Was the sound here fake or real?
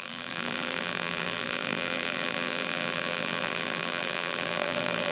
fake